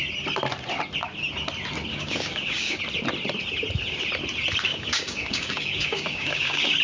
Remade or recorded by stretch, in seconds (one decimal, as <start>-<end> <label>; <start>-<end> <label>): 0.0-1.9 recorded; 1.9-2.8 remade; 2.8-4.7 recorded; 4.7-6.8 remade